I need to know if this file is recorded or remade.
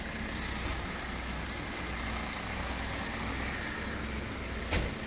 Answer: recorded